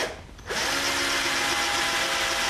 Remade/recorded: recorded